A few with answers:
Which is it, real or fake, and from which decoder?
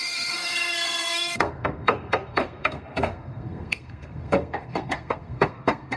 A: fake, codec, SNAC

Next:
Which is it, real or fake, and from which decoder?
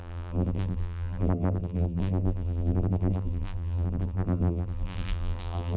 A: fake, vocoder, BigVGAN v2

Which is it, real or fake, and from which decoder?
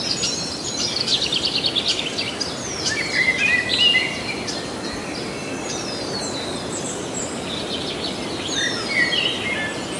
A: real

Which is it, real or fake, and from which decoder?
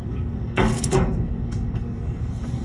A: fake, codec, SNAC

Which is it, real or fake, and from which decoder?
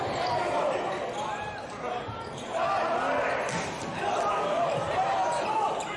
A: real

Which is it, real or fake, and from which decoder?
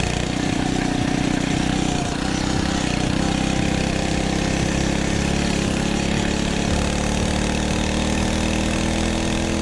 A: real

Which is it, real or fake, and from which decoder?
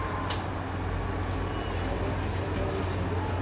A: real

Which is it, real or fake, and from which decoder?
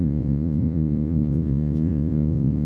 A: fake, vocoder, Vocos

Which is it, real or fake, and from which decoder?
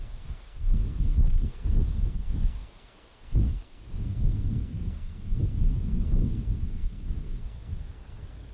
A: fake, codec, SNAC